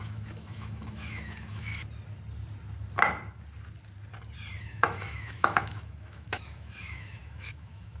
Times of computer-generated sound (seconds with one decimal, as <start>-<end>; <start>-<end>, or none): 0.0-1.7; 4.6-8.0